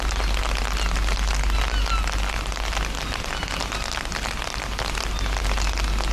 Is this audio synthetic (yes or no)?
no